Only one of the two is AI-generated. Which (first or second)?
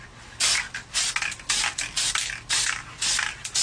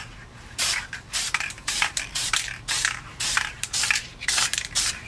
second